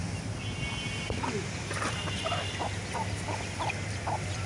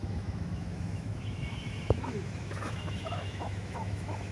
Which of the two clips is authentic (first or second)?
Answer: first